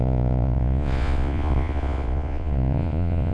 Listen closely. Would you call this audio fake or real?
fake